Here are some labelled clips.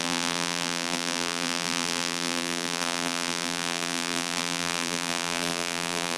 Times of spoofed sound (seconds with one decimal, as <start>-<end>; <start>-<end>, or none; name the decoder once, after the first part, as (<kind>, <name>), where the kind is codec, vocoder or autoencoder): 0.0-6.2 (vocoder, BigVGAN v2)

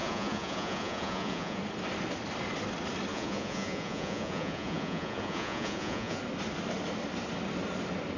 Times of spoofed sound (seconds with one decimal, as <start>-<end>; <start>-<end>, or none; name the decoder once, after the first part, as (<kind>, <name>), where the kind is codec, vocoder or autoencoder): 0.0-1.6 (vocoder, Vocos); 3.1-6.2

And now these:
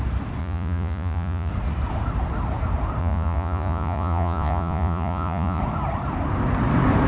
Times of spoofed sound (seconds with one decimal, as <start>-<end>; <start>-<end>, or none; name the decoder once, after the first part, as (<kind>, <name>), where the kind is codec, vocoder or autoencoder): 0.4-1.5 (vocoder, Vocos); 3.0-5.6